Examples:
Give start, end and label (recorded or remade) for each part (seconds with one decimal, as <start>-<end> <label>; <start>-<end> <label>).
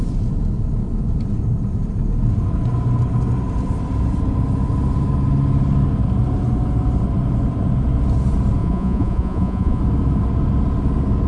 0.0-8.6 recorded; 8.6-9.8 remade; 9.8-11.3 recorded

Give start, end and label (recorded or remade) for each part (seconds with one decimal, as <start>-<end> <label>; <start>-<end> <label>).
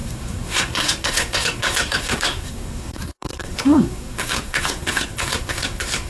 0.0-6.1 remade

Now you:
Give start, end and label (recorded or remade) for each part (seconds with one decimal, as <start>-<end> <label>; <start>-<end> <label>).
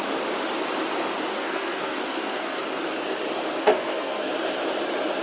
0.0-1.3 recorded; 1.3-2.6 remade; 2.6-3.6 recorded; 3.6-4.3 remade; 4.3-5.2 recorded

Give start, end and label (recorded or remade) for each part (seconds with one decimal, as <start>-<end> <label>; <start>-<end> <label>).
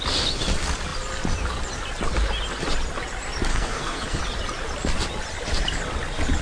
0.0-3.5 recorded; 3.5-4.2 remade; 4.2-6.4 recorded